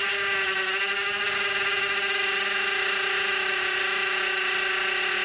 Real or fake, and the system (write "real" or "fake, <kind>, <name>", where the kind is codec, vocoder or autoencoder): real